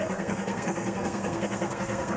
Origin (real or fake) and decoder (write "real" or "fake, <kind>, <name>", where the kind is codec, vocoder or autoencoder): fake, codec, SNAC